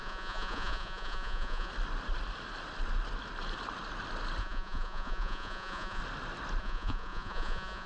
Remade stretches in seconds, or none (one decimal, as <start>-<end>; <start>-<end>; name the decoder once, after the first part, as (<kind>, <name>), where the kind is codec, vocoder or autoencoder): 0.0-1.7 (vocoder, Vocos); 4.4-6.0; 6.6-7.9